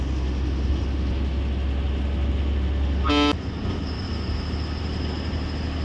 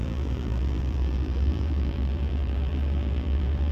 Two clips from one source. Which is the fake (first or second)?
second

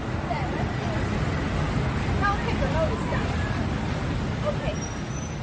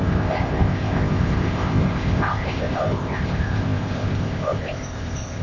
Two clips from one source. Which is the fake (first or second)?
second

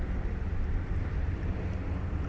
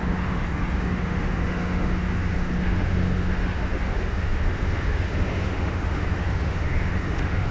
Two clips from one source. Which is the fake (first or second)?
second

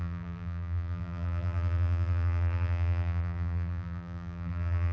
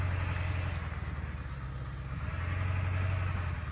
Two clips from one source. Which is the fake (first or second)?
first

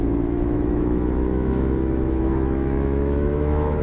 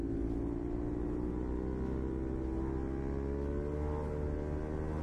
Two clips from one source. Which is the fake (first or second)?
first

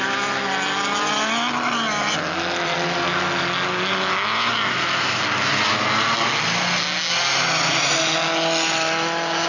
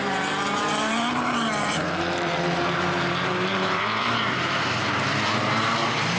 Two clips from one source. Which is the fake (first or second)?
second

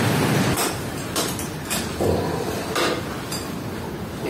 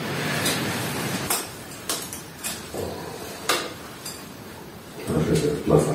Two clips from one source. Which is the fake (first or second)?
second